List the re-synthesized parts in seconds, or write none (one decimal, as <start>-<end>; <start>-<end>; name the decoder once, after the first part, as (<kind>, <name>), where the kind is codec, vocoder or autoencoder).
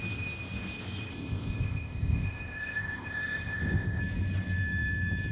1.1-4.0 (codec, ZipCodec)